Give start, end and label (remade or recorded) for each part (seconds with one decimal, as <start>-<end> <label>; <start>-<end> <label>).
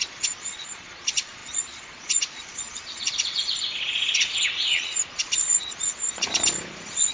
0.0-7.1 remade